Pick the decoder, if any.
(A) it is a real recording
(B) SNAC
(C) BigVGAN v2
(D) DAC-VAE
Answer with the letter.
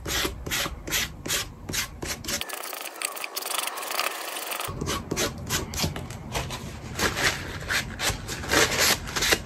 A